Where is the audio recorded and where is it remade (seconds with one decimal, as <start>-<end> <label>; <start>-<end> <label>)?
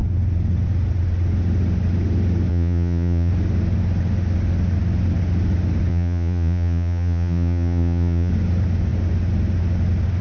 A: 0.0-2.5 recorded; 2.5-3.3 remade; 3.3-5.9 recorded; 5.9-8.3 remade; 8.3-10.2 recorded